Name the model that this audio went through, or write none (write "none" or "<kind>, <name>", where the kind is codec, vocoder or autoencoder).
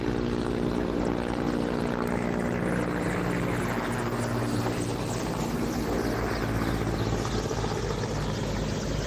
none